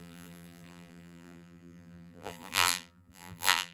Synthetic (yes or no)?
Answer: yes